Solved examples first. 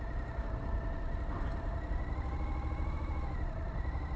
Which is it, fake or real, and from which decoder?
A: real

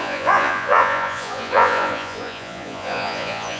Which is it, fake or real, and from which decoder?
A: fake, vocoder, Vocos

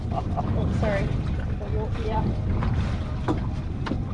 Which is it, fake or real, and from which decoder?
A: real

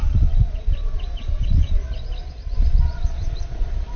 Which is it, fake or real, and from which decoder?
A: fake, vocoder, Vocos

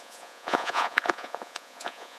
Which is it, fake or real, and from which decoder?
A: fake, vocoder, Vocos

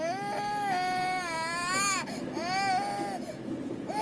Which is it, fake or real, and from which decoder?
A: real